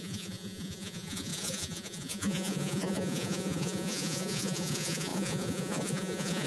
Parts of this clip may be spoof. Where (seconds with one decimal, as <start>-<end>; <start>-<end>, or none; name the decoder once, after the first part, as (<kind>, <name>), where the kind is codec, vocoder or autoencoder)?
0.0-6.5 (vocoder, Vocos)